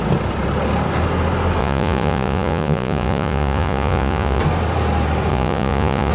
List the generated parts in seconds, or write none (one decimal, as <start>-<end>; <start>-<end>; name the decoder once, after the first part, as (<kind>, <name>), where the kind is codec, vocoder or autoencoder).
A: 1.6-4.4 (vocoder, Vocos); 5.3-6.1